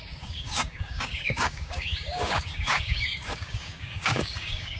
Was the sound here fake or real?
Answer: fake